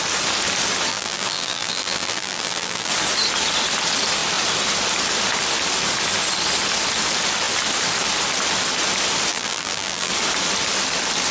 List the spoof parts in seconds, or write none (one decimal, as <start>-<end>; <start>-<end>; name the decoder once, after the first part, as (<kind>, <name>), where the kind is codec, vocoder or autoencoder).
0.9-2.9 (vocoder, BigVGAN v2); 9.3-10.1